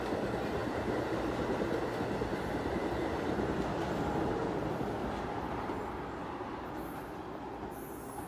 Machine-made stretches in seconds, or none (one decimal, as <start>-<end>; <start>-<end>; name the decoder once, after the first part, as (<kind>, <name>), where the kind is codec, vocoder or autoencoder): 0.6-1.8 (vocoder, BigVGAN v2); 2.3-3.7; 5.0-5.6